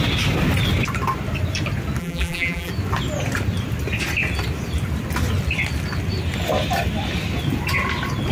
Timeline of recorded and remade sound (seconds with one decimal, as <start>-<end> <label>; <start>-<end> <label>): 0.0-2.0 recorded; 2.0-2.7 remade; 2.7-8.3 recorded